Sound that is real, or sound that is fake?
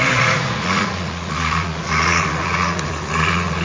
fake